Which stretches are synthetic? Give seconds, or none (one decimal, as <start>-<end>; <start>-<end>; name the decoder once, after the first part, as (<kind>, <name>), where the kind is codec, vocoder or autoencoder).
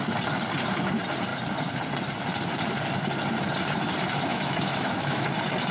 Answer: 4.3-5.3 (autoencoder, DAC-VAE)